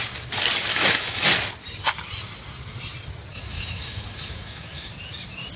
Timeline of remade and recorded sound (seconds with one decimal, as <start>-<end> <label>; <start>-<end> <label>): 0.0-0.7 recorded; 0.7-1.2 remade; 1.2-3.3 recorded; 3.3-4.9 remade; 4.9-5.6 recorded